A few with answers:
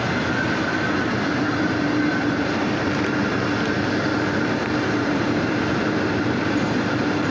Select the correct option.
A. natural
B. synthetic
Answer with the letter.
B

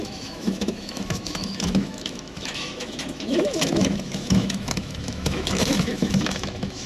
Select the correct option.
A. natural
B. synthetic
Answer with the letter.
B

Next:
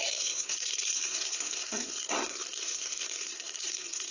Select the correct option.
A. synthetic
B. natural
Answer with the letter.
A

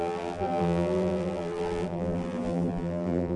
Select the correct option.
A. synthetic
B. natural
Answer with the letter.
A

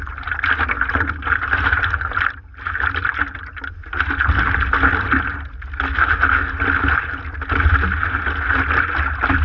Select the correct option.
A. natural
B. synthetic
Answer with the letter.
A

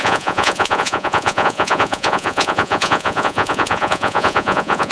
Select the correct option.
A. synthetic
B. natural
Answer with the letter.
A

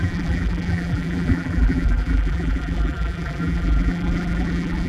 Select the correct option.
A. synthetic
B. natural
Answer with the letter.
A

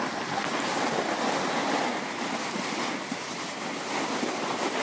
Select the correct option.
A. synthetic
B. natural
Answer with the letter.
B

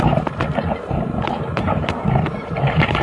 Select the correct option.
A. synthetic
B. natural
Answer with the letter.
A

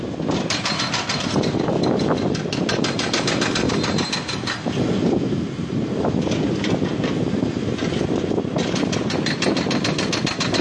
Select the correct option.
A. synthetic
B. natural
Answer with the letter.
A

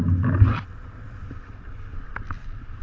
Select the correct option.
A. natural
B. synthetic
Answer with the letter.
A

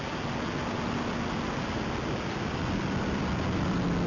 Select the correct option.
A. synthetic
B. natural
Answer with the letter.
B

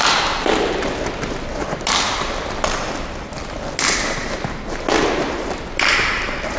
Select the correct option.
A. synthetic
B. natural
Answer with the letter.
B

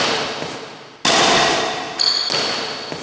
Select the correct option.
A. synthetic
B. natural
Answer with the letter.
B